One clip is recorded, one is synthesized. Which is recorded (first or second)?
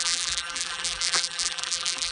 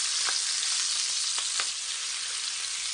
second